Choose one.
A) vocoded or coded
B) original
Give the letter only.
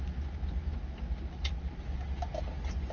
B